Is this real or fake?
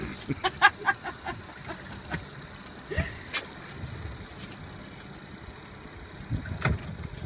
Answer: real